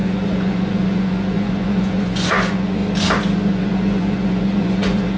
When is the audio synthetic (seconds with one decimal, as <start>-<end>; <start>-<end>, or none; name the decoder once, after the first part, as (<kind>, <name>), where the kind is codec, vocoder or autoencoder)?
0.0-2.8 (vocoder, Vocos); 3.5-5.2